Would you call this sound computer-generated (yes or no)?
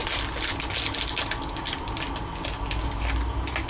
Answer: no